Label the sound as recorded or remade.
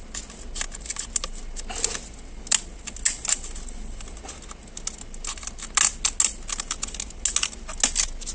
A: recorded